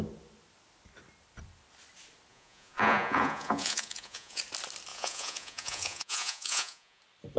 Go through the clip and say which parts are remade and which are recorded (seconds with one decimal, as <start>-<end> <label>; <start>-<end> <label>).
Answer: 0.0-2.3 recorded; 2.3-4.4 remade; 4.4-4.9 recorded; 4.9-7.0 remade; 7.0-7.4 recorded